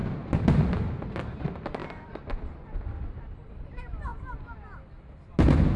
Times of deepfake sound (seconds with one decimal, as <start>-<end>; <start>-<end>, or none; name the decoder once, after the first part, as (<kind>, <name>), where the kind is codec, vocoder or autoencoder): none